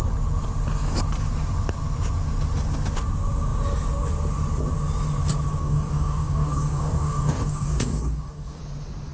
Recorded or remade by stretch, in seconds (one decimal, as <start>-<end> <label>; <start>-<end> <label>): 0.0-5.6 recorded; 5.6-8.6 remade; 8.6-9.1 recorded